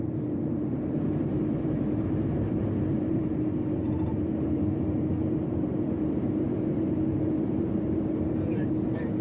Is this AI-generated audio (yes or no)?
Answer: yes